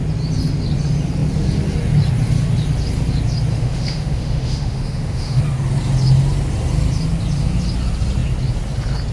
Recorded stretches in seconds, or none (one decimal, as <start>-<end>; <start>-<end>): 0.0-3.5; 5.4-9.1